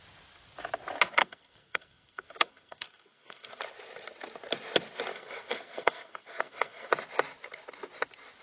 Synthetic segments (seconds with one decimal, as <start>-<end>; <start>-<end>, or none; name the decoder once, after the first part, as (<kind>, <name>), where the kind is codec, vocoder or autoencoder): 1.2-3.6 (codec, SNAC); 5.1-6.9